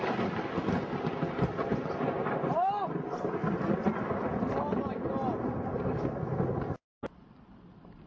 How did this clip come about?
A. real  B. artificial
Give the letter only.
A